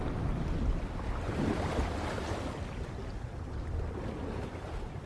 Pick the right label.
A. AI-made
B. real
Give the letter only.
B